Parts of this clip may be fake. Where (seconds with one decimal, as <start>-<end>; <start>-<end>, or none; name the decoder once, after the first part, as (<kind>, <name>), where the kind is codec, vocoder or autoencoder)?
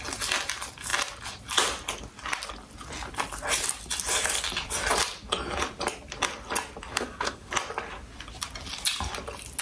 6.9-7.5 (codec, SNAC)